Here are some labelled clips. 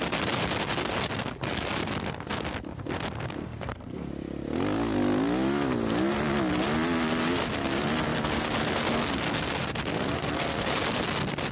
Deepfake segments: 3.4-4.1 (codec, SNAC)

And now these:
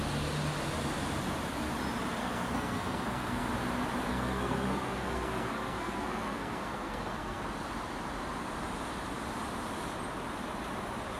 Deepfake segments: 2.2-3.5 (codec, SNAC); 4.1-7.4

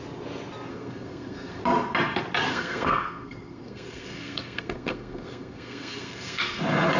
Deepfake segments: 0.7-1.6 (codec, SNAC); 2.5-6.6

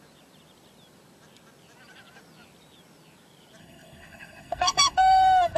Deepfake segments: 3.6-5.6 (codec, SNAC)